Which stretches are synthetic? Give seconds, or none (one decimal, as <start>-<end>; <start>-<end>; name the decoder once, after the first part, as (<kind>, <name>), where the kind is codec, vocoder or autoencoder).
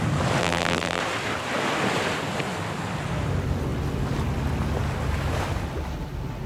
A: 0.4-1.0 (vocoder, BigVGAN v2)